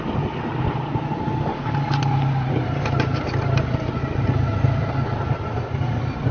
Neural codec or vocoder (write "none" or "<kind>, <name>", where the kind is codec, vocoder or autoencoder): none